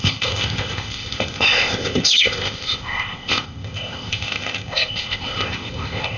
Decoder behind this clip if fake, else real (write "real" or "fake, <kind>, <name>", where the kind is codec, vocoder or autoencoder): fake, codec, ZipCodec